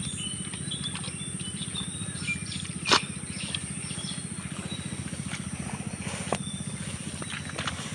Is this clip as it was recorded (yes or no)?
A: yes